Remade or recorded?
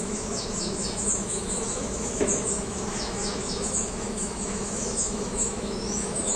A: remade